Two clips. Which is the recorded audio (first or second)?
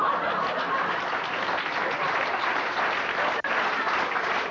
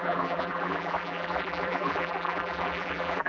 first